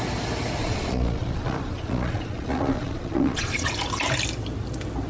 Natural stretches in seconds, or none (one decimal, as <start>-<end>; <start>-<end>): 0.0-0.6; 3.7-5.1